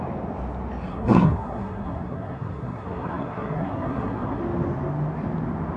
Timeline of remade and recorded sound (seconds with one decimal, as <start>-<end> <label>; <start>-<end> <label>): 0.0-0.9 recorded; 0.9-4.4 remade; 4.4-5.8 recorded